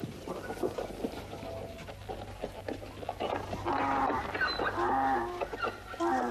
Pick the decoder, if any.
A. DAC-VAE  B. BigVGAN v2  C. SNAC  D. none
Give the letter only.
D